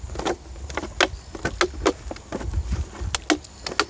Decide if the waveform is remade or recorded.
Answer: recorded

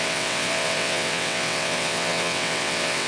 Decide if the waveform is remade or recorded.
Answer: remade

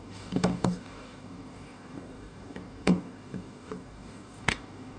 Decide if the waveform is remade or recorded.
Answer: remade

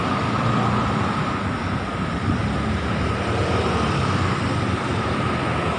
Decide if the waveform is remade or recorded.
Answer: recorded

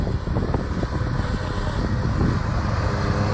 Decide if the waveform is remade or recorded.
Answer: recorded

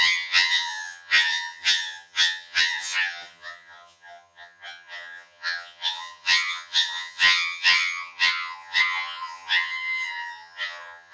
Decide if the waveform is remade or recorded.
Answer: remade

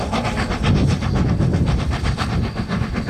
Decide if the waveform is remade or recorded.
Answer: recorded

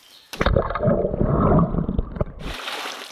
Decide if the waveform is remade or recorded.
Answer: recorded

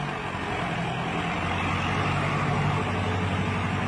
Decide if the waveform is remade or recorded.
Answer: recorded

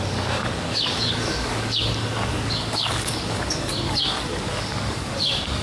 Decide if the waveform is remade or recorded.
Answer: remade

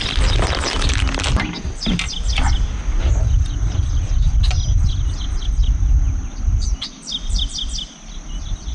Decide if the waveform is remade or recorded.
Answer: recorded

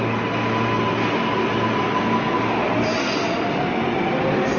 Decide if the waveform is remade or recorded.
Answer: recorded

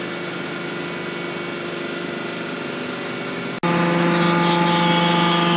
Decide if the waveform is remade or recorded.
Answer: recorded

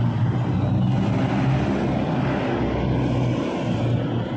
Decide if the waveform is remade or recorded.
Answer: recorded